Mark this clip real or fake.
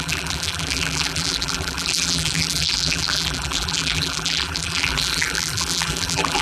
fake